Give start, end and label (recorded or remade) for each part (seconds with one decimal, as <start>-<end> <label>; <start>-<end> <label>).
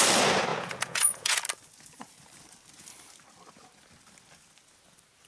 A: 0.0-0.5 recorded; 0.5-1.4 remade; 1.4-5.3 recorded